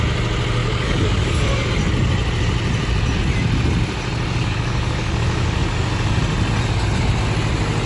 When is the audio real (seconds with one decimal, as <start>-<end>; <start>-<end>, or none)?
0.0-0.6; 1.7-4.4; 5.9-7.9